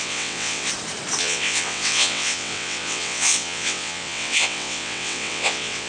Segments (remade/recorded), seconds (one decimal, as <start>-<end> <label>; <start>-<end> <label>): 0.0-0.7 remade; 0.7-1.2 recorded; 1.2-5.9 remade